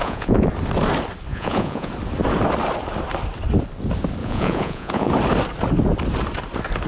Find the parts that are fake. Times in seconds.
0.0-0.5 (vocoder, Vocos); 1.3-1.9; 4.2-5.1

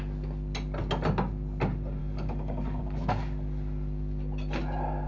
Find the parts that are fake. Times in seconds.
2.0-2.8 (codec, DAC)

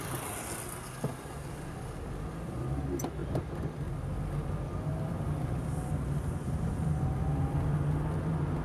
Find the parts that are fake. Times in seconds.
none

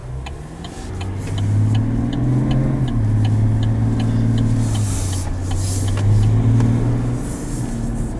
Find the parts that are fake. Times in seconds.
none

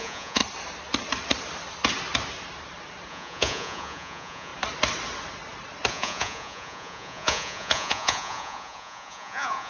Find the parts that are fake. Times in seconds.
0.0-0.4 (vocoder, Vocos); 3.1-4.5; 5.9-9.7

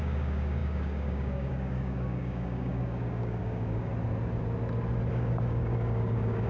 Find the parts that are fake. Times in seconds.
0.0-3.9 (codec, DAC); 5.1-6.5

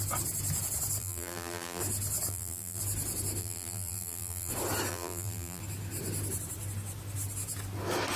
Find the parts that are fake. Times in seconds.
1.0-1.8 (vocoder, BigVGAN v2); 2.3-2.8; 3.4-4.5; 4.9-5.6